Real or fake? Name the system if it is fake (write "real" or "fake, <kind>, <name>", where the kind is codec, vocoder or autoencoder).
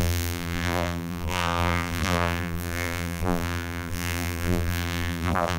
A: fake, vocoder, BigVGAN v2